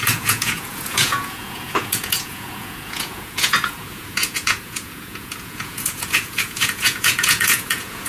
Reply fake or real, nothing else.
fake